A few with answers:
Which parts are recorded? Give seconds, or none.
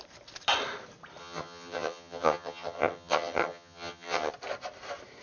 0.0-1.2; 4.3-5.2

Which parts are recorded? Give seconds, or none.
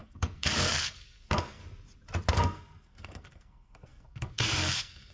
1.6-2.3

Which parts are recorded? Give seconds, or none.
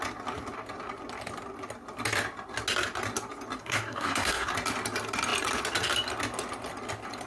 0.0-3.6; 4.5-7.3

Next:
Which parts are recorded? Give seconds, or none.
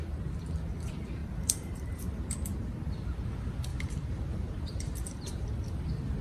0.0-1.2; 2.0-3.7; 5.5-6.2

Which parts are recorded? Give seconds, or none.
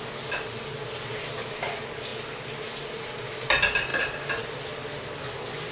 0.0-5.7